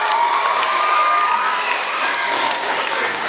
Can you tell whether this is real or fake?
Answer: fake